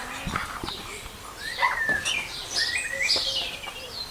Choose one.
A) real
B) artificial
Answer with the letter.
A